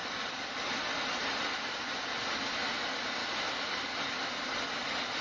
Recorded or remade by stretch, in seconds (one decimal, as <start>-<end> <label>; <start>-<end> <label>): 0.0-5.2 recorded